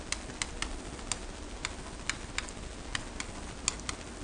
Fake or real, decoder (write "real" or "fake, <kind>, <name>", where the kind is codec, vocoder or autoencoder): real